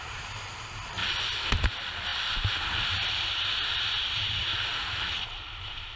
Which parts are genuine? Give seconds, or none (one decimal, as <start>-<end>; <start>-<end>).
1.0-1.7; 4.5-5.6